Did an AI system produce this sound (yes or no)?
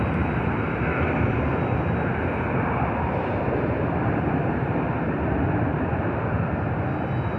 no